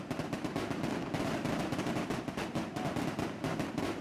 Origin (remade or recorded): recorded